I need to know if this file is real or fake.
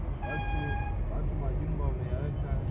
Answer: real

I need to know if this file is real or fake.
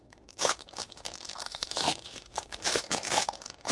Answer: fake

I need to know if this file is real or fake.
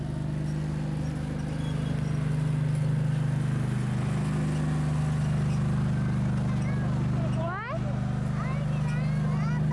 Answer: real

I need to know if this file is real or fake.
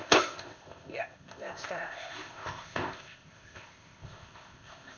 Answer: fake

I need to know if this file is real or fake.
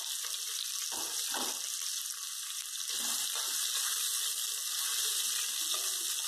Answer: real